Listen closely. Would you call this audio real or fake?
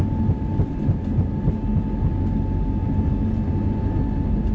real